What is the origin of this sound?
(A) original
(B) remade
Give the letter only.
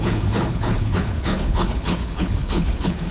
B